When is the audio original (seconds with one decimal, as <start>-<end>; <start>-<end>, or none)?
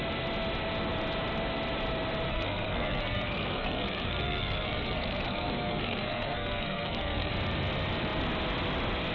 0.0-2.3; 7.3-9.1